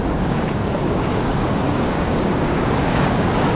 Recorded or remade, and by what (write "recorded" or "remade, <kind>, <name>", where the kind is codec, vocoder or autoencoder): remade, codec, DAC